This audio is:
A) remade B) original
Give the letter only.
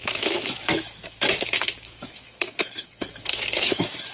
A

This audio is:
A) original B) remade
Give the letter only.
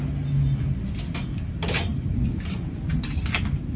A